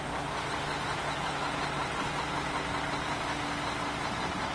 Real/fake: real